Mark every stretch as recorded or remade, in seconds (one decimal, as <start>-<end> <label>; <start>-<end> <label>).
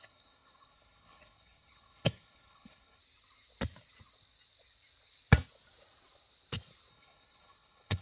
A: 0.0-3.0 remade; 3.0-6.9 recorded; 6.9-8.0 remade